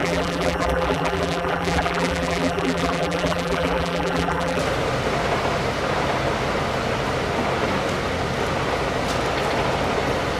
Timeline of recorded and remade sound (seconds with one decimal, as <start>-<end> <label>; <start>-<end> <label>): 0.0-4.6 remade; 4.6-10.4 recorded